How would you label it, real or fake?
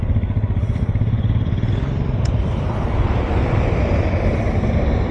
fake